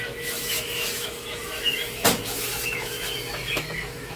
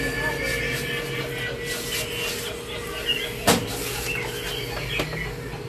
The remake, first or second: first